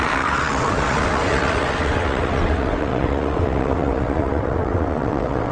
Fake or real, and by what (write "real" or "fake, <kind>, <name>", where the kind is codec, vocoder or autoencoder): fake, vocoder, WaveNeXt